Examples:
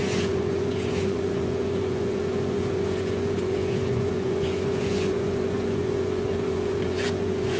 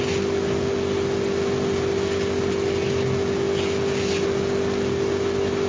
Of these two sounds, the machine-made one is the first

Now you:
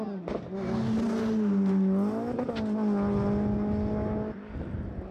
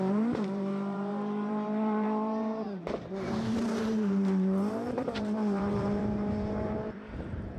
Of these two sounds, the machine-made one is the second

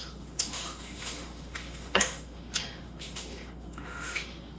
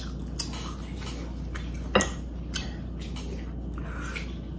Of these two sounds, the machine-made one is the first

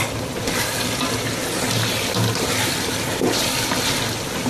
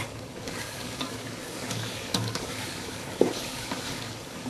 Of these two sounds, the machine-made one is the second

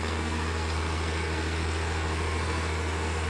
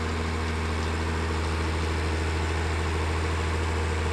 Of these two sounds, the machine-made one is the first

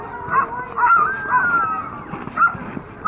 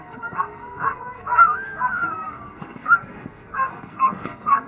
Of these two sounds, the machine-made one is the second